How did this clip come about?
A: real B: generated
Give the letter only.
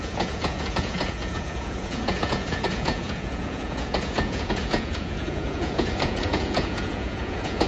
B